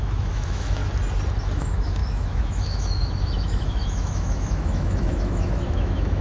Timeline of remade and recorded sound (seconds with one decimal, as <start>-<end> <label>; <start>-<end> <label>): 0.0-0.8 remade; 0.8-1.4 recorded; 1.4-6.2 remade